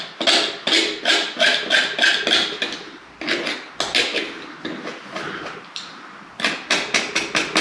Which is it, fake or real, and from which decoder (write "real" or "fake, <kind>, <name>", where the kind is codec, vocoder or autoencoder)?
real